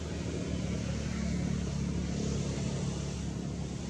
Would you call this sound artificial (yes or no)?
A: no